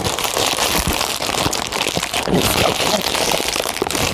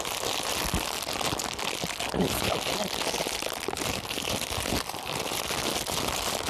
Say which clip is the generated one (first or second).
first